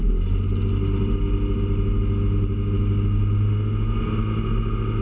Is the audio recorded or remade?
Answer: recorded